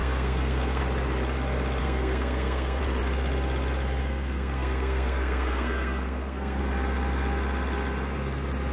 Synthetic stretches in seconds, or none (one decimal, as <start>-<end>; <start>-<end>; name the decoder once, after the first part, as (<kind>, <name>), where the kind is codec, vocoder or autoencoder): 0.0-0.8 (codec, SNAC); 1.8-2.8; 4.0-6.6

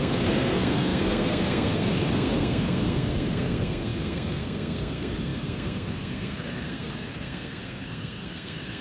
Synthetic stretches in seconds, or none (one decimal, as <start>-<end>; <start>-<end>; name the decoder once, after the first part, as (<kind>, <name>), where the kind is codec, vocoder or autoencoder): 0.0-8.8 (codec, SNAC)

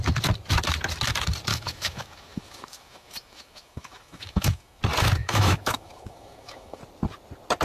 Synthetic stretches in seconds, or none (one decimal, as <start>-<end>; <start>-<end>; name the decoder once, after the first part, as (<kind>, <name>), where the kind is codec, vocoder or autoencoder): 1.5-4.8 (autoencoder, DAC-VAE); 5.2-6.8

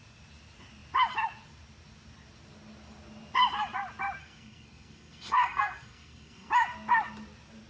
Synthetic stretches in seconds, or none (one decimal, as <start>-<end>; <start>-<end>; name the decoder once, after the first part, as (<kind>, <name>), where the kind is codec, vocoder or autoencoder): 4.2-6.5 (codec, SNAC)

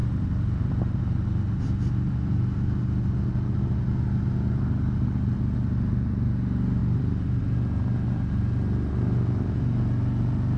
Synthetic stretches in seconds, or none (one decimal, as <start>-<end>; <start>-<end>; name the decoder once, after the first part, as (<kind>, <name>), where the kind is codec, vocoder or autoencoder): 0.0-3.1 (vocoder, BigVGAN v2); 6.8-7.4

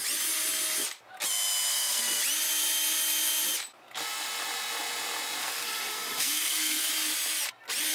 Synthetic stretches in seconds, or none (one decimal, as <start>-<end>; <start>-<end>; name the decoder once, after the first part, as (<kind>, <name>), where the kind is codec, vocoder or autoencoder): 1.7-2.2 (codec, SNAC); 5.4-6.9

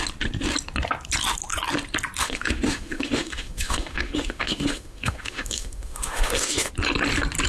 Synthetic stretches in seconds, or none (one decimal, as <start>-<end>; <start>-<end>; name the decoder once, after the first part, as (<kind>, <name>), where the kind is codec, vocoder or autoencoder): 2.2-6.7 (autoencoder, DAC-VAE)